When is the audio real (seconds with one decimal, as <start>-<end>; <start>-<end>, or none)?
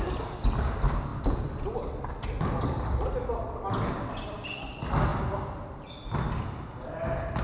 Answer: 0.0-7.4